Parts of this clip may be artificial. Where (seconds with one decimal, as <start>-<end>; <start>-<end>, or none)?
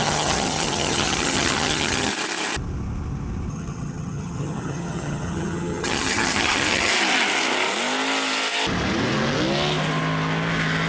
0.0-2.1; 3.5-6.9